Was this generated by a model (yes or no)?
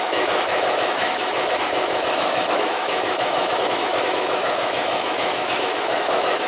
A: yes